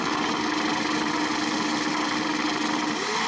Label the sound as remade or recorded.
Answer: recorded